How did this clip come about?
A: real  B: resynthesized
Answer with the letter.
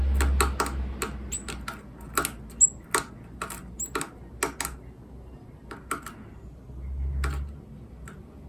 A